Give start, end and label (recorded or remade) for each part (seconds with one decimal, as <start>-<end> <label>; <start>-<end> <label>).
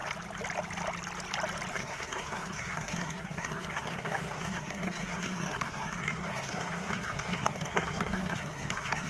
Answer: 0.0-1.7 recorded; 1.7-9.1 remade